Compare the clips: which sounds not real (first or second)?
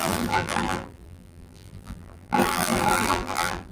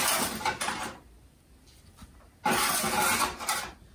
first